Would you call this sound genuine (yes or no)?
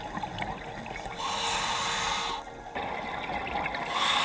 yes